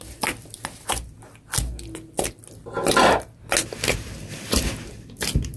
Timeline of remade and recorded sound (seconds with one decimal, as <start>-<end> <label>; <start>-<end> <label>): 0.0-5.6 recorded